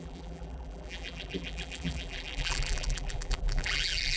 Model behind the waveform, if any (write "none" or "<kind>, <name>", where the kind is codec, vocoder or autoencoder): vocoder, BigVGAN v2